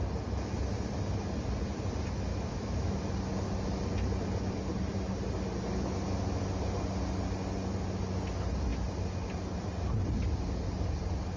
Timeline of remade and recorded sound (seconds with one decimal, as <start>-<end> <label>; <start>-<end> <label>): 0.0-2.3 recorded; 2.3-3.0 remade; 3.0-11.4 recorded